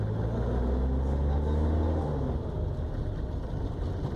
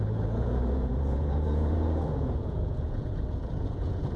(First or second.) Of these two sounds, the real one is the first